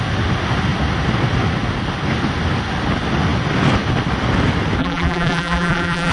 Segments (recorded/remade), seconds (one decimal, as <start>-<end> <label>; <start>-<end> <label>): 0.0-4.8 recorded; 4.8-6.1 remade